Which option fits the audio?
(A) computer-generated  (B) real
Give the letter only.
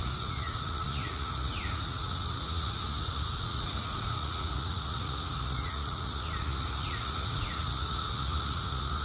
A